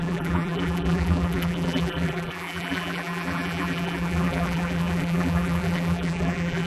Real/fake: fake